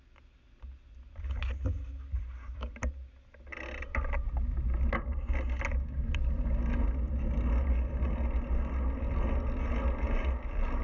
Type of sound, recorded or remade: recorded